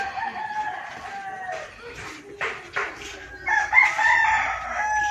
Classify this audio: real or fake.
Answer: real